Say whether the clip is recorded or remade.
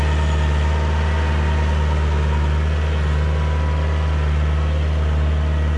recorded